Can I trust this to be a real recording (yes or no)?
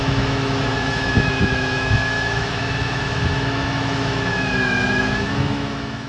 no